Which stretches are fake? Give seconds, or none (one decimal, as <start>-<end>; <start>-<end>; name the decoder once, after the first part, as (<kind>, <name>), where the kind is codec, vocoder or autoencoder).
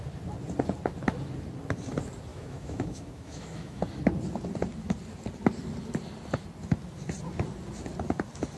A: 2.3-3.8 (autoencoder, DAC-VAE)